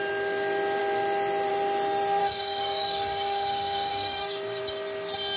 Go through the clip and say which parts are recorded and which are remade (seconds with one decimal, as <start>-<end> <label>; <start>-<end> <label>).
0.0-2.2 recorded; 2.2-4.6 remade; 4.6-5.4 recorded